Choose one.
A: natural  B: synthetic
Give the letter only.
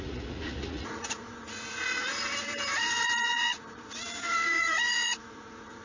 B